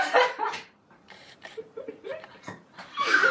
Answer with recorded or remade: remade